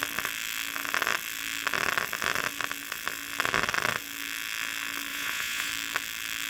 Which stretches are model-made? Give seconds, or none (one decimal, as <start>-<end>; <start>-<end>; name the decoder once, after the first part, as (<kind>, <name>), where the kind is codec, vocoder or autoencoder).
5.1-5.7 (vocoder, Vocos)